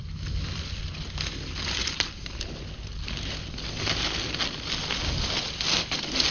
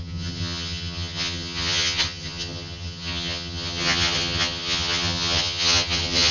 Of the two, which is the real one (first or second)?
first